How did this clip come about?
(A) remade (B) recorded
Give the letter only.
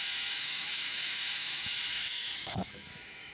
A